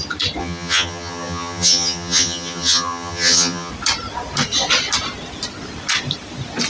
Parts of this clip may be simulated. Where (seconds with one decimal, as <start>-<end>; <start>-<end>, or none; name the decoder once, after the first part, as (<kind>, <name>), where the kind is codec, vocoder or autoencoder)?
0.4-3.7 (vocoder, HiFi-GAN)